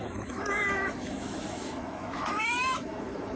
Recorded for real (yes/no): no